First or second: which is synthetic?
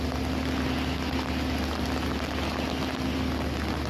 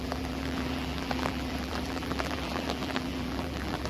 second